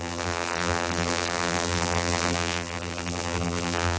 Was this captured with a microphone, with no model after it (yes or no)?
no